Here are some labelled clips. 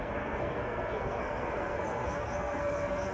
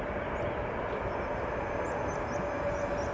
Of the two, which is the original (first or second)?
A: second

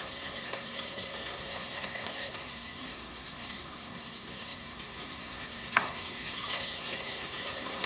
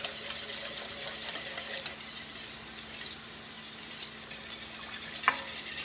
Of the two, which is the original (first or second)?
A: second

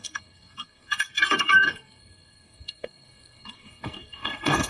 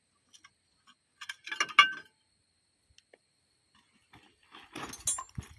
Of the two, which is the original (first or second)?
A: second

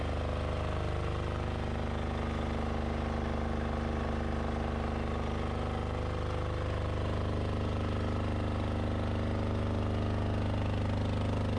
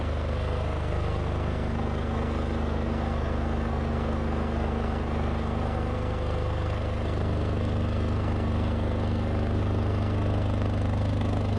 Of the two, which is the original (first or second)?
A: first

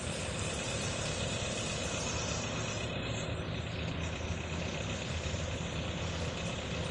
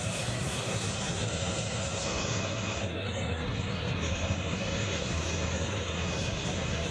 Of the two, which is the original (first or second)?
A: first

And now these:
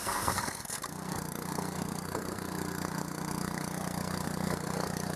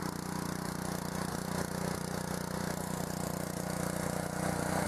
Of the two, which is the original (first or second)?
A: second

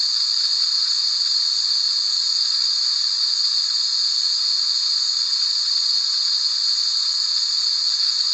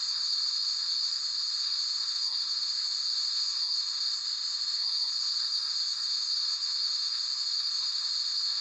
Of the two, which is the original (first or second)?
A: first